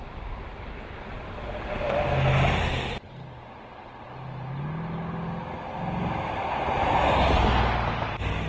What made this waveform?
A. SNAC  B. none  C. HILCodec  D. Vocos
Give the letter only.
B